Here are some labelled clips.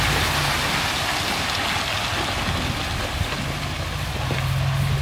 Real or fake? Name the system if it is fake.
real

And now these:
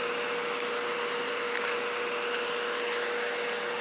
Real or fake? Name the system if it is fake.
real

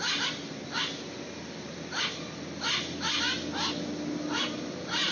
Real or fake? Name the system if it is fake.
real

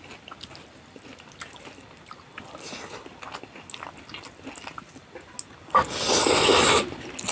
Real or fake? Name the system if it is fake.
real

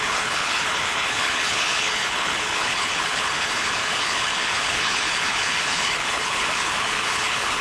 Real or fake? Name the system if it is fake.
fake, codec, HILCodec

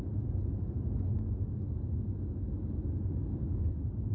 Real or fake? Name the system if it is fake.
real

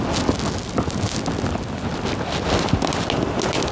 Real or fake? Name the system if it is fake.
real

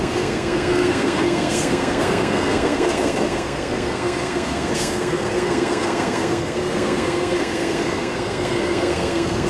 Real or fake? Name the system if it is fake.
fake, codec, SNAC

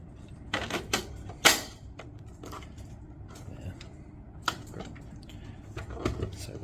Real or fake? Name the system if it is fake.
fake, vocoder, BigVGAN v2